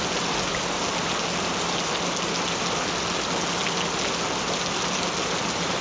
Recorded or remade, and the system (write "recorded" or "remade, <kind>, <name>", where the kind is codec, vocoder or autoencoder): recorded